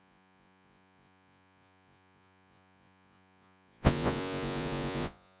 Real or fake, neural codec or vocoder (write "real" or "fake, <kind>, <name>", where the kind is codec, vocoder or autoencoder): fake, vocoder, Vocos